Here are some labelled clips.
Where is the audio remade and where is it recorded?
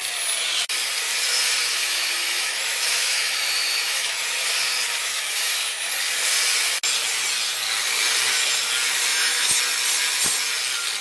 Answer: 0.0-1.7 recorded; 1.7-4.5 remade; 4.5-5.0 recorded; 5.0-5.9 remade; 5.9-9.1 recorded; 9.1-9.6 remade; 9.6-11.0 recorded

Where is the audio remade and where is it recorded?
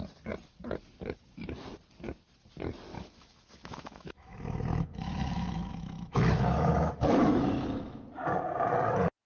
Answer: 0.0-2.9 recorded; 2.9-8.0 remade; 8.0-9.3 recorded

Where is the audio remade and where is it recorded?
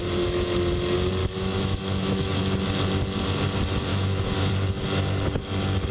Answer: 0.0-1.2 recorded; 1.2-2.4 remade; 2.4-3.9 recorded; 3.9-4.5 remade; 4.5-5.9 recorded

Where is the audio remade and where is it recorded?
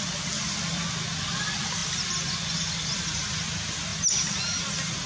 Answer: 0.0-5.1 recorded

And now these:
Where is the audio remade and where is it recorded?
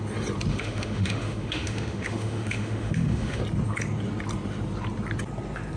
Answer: 0.0-0.5 recorded; 0.5-3.4 remade; 3.4-5.8 recorded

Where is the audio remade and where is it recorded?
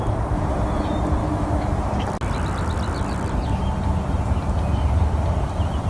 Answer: 0.0-1.2 recorded; 1.2-1.9 remade; 1.9-5.9 recorded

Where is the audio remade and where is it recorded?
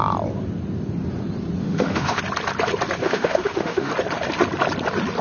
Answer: 0.0-1.6 recorded; 1.6-2.2 remade; 2.2-3.0 recorded; 3.0-3.9 remade; 3.9-5.2 recorded